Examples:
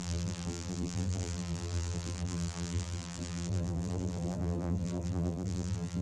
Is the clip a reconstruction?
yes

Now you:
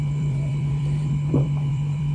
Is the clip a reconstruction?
yes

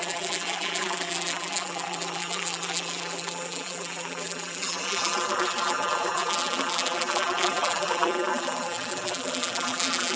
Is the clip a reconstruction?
yes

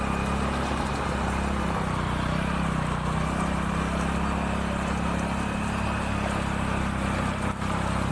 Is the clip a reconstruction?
no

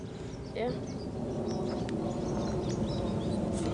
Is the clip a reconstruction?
no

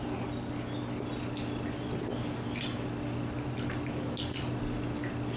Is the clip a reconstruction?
no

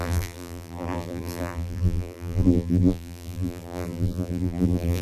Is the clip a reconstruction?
yes